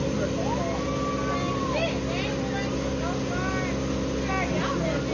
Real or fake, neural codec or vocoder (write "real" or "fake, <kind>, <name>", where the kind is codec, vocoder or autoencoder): real